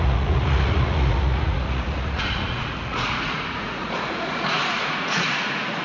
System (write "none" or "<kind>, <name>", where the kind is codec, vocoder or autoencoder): vocoder, Vocos